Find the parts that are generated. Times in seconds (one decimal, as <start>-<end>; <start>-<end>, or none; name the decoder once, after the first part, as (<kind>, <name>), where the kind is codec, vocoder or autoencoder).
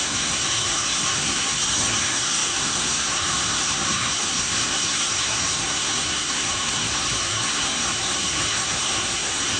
0.0-9.6 (codec, SNAC)